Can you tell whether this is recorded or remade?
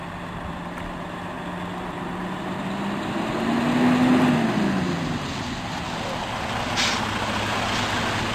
recorded